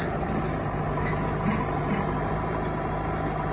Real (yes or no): yes